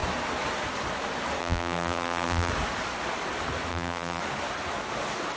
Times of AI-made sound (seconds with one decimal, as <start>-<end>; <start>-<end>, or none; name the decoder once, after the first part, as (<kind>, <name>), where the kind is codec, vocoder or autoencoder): 1.4-2.5 (vocoder, BigVGAN v2); 3.7-4.2